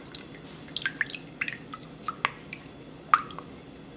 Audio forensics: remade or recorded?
recorded